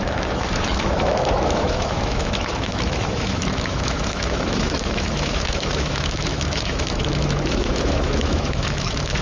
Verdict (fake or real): fake